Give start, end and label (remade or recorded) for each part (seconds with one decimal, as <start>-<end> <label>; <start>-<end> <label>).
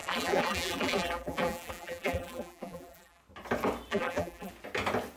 0.0-3.2 remade; 3.2-3.9 recorded; 3.9-4.5 remade; 4.5-5.2 recorded